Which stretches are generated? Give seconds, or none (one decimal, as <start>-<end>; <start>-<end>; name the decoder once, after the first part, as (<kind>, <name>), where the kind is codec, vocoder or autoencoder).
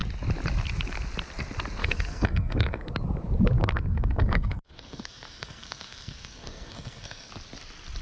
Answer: 1.8-2.9 (codec, SNAC); 3.6-7.3